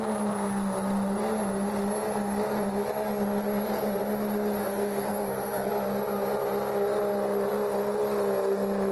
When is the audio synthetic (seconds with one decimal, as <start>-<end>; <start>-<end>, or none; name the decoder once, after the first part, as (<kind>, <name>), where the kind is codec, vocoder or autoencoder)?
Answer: 4.6-5.7 (codec, SNAC)